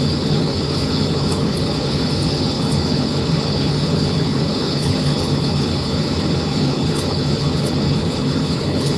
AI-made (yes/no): yes